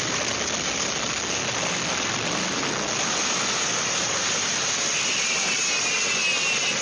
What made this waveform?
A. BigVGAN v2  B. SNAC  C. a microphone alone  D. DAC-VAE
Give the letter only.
C